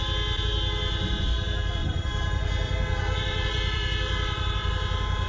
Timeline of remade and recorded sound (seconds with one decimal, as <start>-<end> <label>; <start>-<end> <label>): 0.0-1.8 recorded; 1.8-4.7 remade; 4.7-5.3 recorded